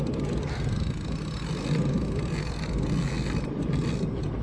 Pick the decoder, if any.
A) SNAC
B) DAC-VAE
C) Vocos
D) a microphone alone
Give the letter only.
D